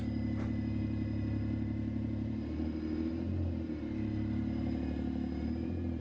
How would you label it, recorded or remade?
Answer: remade